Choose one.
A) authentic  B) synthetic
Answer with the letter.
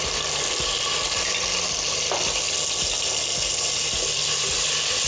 A